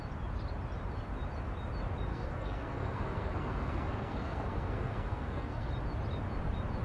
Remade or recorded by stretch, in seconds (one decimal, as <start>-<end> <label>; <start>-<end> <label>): 0.0-2.1 recorded; 2.1-5.7 remade; 5.7-6.8 recorded